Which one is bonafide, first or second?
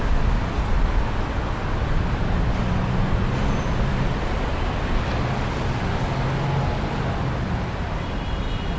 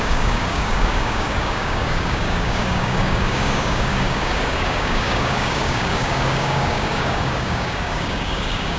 first